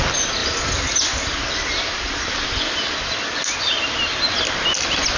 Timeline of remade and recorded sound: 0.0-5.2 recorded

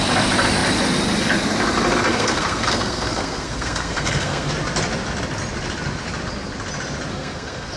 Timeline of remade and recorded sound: 0.0-2.1 recorded; 2.1-4.5 remade; 4.5-7.1 recorded; 7.1-7.8 remade